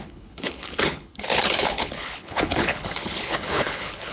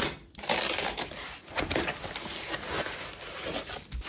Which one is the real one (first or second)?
second